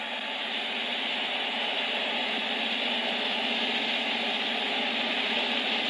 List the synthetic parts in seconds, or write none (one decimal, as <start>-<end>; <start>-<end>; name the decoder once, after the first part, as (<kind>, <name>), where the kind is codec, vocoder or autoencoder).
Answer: 0.9-2.3 (vocoder, BigVGAN v2); 3.0-3.6